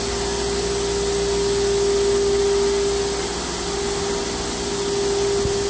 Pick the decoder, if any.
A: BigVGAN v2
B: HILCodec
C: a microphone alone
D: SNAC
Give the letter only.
C